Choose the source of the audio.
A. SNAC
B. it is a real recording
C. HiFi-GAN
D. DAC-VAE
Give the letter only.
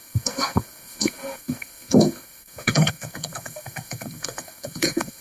A